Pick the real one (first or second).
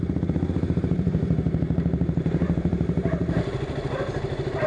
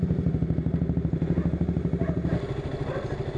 second